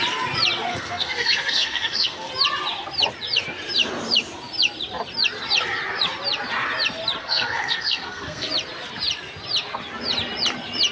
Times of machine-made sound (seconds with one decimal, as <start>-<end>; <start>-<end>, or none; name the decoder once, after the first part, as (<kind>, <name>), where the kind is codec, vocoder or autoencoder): 0.7-2.3 (codec, SNAC); 7.2-8.5